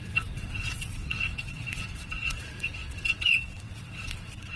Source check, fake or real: fake